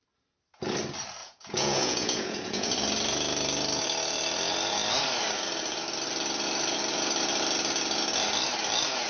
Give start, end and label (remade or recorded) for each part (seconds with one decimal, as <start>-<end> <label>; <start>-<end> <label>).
0.0-1.2 recorded; 1.2-2.7 remade; 2.7-9.1 recorded